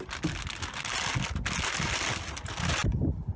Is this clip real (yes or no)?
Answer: yes